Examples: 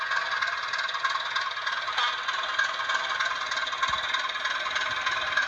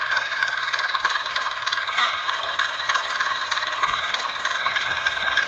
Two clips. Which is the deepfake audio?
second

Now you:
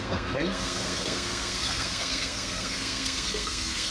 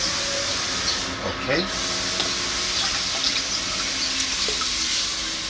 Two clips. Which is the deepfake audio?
first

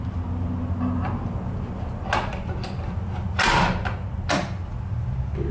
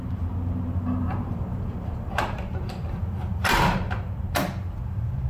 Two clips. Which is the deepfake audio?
second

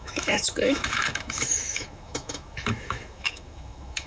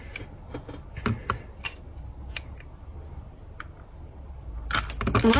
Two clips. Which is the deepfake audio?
first